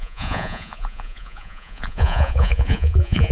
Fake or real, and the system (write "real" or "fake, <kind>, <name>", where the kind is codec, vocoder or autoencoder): fake, vocoder, Vocos